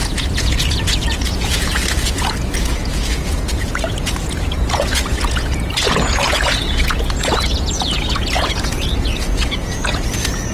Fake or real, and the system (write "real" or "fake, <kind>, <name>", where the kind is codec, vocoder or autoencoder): fake, vocoder, Vocos